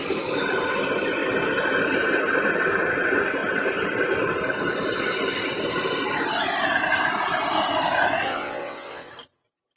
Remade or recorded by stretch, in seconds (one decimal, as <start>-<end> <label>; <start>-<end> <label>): 0.0-8.3 recorded; 8.3-9.1 remade; 9.1-9.8 recorded